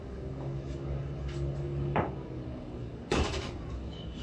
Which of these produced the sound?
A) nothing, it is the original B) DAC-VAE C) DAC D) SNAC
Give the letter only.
C